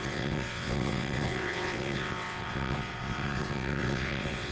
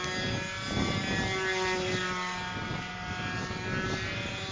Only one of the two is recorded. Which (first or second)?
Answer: second